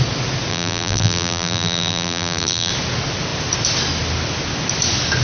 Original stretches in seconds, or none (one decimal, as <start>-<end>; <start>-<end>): 0.0-0.5; 2.7-5.2

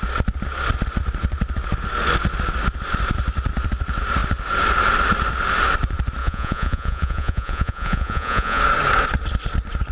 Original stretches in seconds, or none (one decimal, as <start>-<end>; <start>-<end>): 0.0-6.2; 8.6-9.9

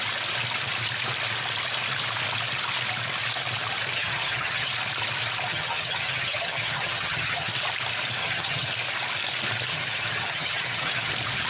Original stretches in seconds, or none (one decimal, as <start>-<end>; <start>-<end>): 0.0-4.0; 4.7-5.5; 7.5-8.2; 8.7-9.7; 11.1-11.5

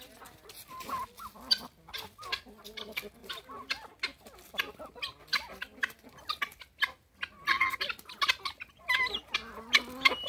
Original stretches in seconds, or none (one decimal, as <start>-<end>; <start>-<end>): 0.0-10.3

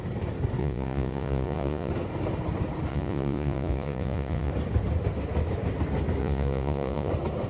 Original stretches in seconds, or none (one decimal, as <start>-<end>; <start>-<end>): 0.0-0.6; 1.9-2.9; 4.5-6.2; 7.1-7.5

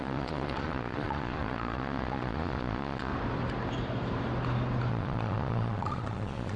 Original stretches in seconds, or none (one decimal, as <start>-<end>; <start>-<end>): 3.1-4.9